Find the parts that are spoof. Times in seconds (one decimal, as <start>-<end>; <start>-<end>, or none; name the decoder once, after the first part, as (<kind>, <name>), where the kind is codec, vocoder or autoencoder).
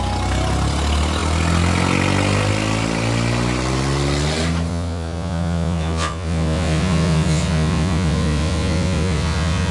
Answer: 4.7-9.7 (vocoder, Vocos)